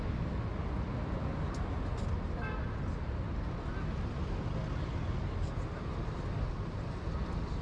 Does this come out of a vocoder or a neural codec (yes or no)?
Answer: no